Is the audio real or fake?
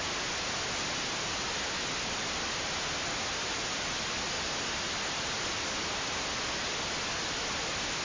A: real